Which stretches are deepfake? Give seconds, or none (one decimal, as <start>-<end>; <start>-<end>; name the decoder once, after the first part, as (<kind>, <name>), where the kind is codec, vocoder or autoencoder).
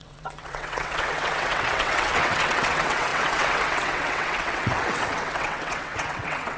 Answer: 0.0-6.6 (vocoder, WaveNeXt)